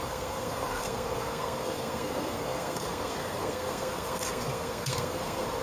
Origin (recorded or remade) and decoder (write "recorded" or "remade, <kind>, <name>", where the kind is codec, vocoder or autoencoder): remade, codec, SNAC